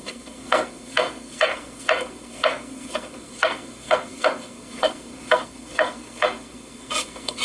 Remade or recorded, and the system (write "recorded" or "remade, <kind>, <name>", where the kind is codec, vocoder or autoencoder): remade, codec, SNAC